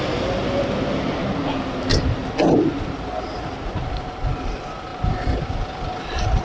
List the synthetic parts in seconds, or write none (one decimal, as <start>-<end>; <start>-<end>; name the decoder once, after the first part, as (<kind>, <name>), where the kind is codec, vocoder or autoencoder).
none